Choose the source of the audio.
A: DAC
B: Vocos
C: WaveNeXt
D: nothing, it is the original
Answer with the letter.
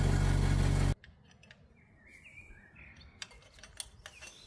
D